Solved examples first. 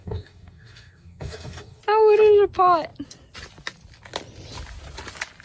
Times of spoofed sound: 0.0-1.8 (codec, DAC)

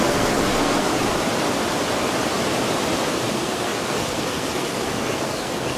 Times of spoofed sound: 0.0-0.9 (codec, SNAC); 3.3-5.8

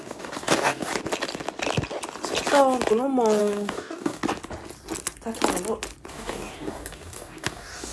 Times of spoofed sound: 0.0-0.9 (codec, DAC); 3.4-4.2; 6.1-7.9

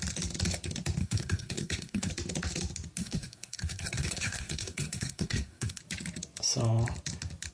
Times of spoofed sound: 1.0-2.1 (codec, SNAC); 3.0-5.8

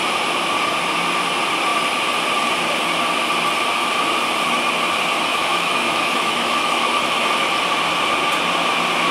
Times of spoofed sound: 5.3-7.6 (autoencoder, DAC-VAE)